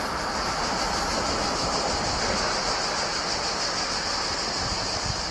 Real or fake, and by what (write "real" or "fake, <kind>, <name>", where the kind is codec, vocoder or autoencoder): real